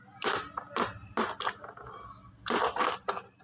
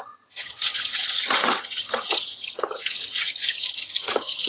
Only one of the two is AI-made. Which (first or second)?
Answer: second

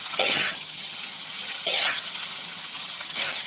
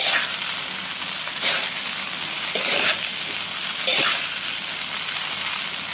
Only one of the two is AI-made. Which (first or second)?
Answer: first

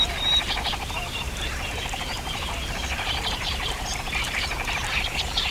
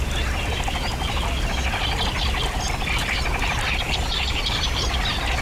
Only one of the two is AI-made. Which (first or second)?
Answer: first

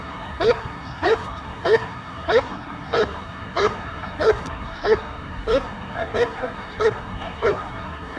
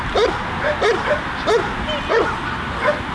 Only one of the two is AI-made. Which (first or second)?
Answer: first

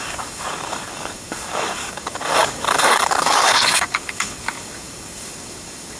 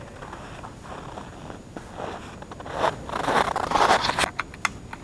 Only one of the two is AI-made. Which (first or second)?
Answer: first